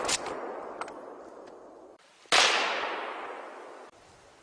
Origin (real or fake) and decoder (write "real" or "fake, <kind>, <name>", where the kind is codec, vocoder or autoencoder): real